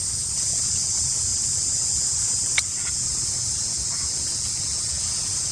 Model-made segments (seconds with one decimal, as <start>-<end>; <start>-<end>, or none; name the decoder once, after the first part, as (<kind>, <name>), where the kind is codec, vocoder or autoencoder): 0.0-5.5 (vocoder, Vocos)